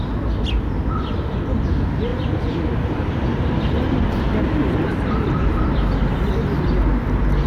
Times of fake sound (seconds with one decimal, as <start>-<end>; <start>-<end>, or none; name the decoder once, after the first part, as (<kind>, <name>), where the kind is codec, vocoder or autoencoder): 2.1-6.3 (vocoder, BigVGAN v2)